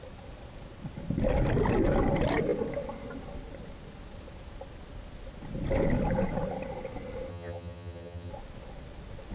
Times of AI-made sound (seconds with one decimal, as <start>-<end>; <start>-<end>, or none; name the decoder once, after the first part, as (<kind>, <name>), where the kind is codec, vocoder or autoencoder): 7.3-8.3 (vocoder, HiFi-GAN)